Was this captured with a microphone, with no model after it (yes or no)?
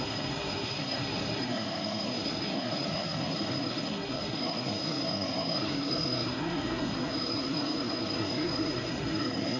no